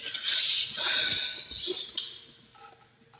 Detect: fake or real real